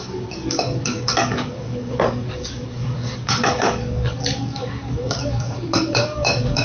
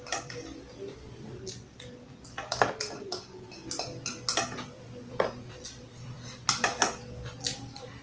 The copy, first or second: first